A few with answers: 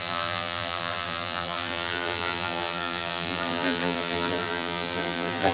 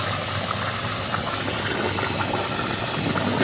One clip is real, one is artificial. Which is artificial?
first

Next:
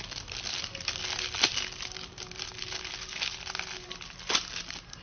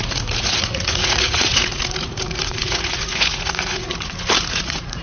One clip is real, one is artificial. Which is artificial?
second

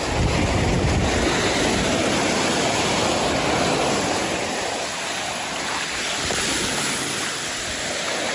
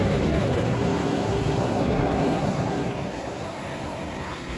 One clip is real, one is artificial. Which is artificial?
second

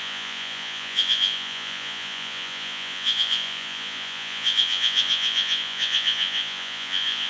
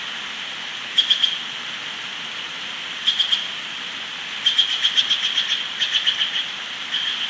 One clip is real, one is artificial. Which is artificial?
first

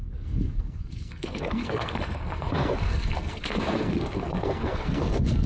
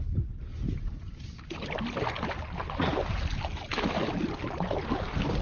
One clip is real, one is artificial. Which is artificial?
first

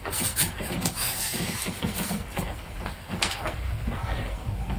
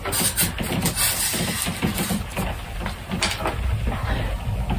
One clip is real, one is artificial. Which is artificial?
first